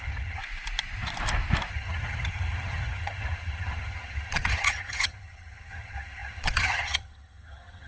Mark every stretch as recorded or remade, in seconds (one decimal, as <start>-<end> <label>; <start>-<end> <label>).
0.0-0.4 remade; 0.4-1.7 recorded; 1.7-7.9 remade